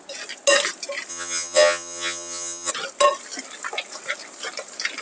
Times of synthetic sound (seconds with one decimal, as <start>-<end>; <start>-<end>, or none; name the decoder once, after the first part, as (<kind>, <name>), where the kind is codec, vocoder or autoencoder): 1.1-2.7 (vocoder, HiFi-GAN)